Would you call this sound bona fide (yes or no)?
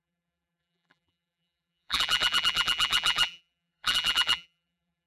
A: no